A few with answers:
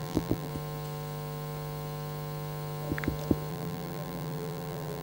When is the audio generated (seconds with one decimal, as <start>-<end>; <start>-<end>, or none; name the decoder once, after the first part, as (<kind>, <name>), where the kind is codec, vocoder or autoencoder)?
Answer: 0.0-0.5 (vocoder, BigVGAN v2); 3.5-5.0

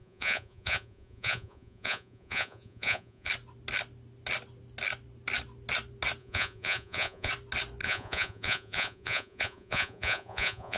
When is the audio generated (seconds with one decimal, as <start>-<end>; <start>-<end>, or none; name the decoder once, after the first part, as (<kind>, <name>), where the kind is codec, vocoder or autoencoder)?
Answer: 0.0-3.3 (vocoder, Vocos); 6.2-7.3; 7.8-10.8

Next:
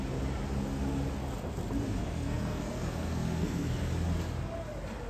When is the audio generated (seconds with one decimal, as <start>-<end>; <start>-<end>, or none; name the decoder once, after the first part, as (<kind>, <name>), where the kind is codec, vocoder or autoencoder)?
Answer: 2.0-3.9 (codec, SNAC)

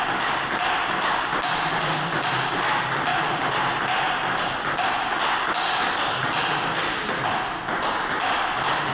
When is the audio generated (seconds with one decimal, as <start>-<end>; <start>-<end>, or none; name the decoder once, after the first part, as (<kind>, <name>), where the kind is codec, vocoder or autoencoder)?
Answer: 0.0-3.1 (vocoder, BigVGAN v2); 8.2-8.9